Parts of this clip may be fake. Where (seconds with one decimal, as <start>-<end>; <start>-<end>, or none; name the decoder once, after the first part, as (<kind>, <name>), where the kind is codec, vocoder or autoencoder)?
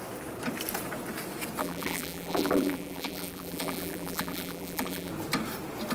1.6-5.1 (vocoder, BigVGAN v2)